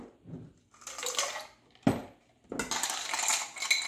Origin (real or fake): real